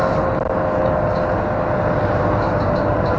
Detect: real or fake real